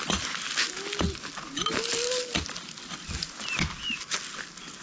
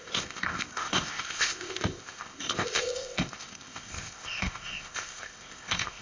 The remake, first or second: second